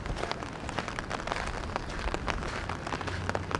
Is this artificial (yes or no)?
yes